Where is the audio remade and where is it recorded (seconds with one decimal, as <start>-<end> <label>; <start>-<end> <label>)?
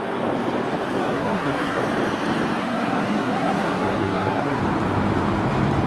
0.0-1.0 recorded; 1.0-1.8 remade; 1.8-2.6 recorded; 2.6-4.6 remade; 4.6-5.9 recorded